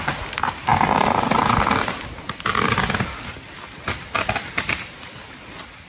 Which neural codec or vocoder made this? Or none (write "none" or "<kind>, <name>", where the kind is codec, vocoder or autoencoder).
none